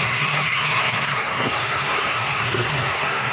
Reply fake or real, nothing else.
fake